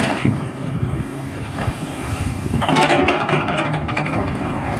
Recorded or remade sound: remade